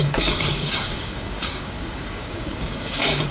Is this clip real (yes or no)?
no